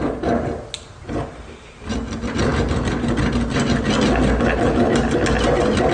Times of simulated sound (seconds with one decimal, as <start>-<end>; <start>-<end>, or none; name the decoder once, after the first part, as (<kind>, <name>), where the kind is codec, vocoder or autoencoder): none